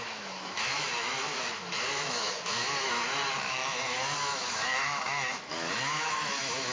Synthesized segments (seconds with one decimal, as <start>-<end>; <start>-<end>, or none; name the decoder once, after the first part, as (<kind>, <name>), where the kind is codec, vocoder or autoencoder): 0.0-6.7 (autoencoder, DAC-VAE)

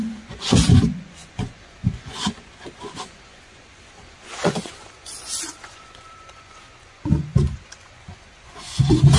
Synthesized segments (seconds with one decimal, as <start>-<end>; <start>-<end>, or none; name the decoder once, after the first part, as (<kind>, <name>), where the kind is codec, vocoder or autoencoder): 0.0-9.2 (vocoder, Vocos)

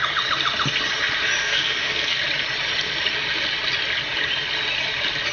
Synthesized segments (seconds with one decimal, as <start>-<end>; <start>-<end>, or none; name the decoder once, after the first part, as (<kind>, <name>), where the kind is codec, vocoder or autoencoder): 1.4-2.2 (codec, SNAC)

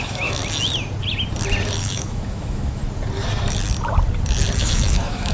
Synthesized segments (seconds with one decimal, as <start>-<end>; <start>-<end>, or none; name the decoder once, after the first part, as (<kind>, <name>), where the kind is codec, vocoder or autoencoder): 0.0-0.4 (autoencoder, DAC-VAE); 1.8-2.8; 4.6-5.3

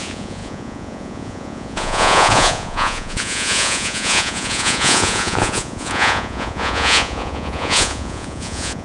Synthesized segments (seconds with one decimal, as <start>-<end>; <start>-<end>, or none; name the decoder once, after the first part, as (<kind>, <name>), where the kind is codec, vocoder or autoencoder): 0.0-8.8 (vocoder, Vocos)

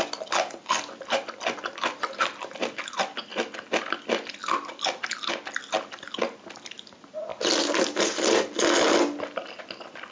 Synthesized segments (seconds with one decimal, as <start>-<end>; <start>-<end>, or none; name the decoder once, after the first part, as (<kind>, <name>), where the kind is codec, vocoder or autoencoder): 4.4-5.3 (vocoder, BigVGAN v2); 7.3-8.0

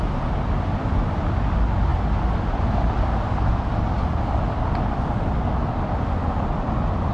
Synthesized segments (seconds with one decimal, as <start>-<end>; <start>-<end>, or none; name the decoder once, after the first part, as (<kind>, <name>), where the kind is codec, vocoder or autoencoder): none

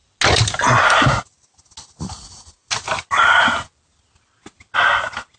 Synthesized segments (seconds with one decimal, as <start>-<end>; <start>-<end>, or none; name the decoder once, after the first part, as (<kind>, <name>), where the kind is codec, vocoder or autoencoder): none